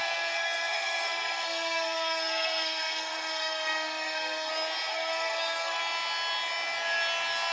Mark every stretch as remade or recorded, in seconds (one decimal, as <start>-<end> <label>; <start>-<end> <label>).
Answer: 0.0-4.5 remade; 4.5-4.9 recorded; 4.9-5.8 remade; 5.8-7.5 recorded